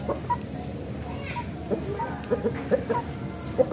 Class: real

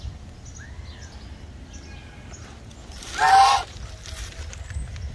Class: real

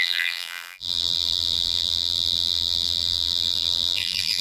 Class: fake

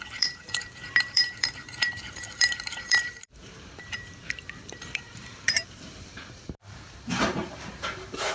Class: fake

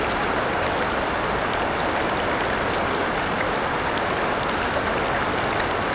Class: real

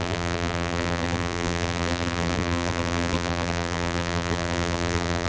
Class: fake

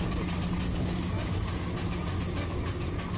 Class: real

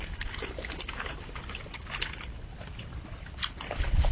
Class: fake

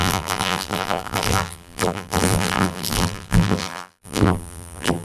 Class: fake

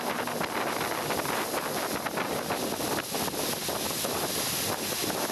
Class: real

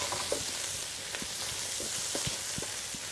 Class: real